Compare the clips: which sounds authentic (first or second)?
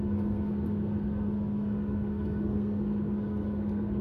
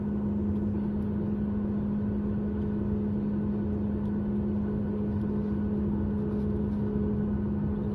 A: second